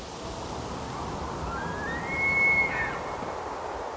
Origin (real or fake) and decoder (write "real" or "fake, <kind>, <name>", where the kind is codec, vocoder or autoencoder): real